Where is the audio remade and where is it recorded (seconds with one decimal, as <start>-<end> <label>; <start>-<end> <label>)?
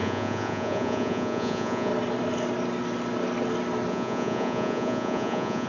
0.0-1.9 remade; 1.9-3.9 recorded; 3.9-5.7 remade